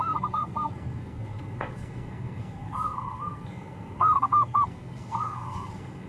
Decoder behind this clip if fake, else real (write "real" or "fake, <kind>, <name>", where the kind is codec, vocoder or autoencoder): fake, codec, SNAC